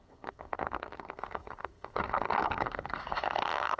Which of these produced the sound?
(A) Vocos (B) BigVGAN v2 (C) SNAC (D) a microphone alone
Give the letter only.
C